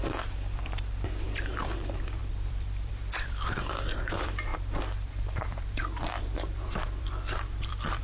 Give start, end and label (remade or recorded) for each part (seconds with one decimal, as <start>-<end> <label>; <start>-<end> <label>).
0.0-8.0 remade